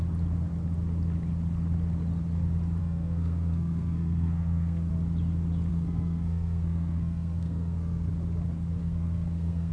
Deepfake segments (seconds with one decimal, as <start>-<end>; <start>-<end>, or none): 2.8-4.9; 5.7-8.1; 8.8-9.7